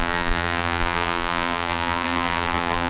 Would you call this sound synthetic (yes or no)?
yes